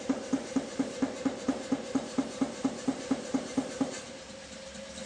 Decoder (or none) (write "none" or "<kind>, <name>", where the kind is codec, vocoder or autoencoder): vocoder, BigVGAN v2